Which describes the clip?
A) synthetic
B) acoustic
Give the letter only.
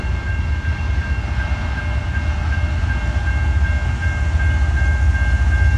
B